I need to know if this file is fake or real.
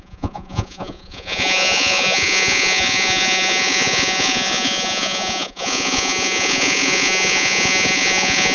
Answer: fake